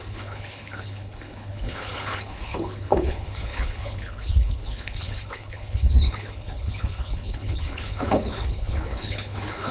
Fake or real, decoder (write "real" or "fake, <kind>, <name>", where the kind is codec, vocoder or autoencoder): fake, codec, HILCodec